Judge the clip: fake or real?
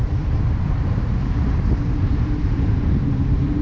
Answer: fake